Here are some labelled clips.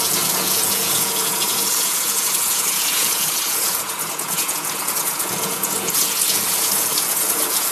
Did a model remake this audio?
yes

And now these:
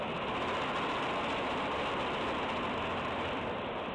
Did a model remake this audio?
no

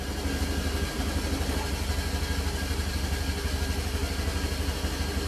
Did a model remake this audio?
no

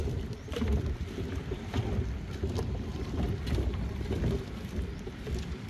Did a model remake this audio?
no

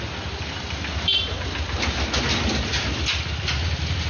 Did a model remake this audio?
no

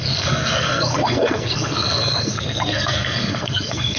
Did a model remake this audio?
yes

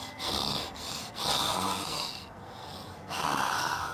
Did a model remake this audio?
yes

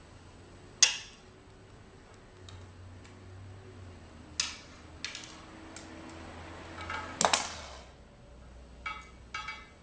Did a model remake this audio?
no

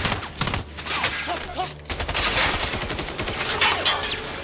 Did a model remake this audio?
no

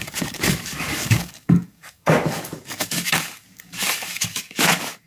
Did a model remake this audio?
yes